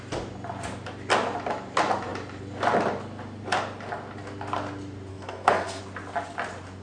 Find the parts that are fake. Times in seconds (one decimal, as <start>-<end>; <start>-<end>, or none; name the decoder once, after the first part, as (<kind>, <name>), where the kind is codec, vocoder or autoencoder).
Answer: 5.1-5.8 (codec, SNAC)